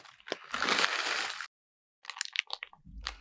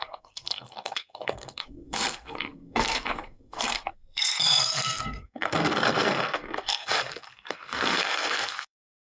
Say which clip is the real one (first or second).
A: first